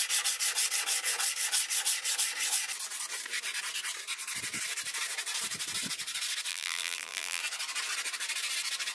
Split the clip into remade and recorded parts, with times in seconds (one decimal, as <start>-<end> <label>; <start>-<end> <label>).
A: 0.0-6.5 recorded; 6.5-7.4 remade; 7.4-8.9 recorded